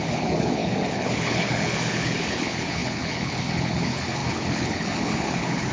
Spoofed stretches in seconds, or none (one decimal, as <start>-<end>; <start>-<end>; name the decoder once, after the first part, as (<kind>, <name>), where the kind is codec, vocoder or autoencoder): 0.0-5.7 (codec, HILCodec)